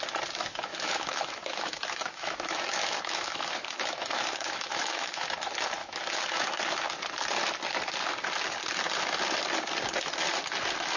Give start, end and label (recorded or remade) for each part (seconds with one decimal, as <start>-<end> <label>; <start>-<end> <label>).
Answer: 0.0-0.7 recorded; 0.7-5.3 remade; 5.3-5.8 recorded; 5.8-6.6 remade; 6.6-11.0 recorded